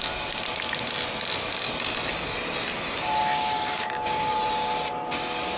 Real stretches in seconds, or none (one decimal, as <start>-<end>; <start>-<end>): 0.0-3.2; 4.3-5.6